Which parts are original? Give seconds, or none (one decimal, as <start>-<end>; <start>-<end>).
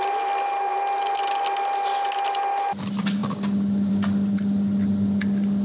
0.0-5.6